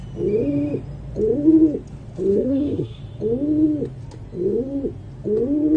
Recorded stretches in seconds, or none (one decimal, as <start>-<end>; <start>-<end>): 0.0-2.3; 3.0-5.8